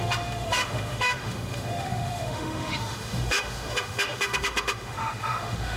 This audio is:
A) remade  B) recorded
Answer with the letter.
A